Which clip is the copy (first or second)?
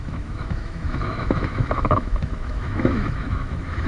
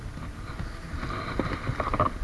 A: first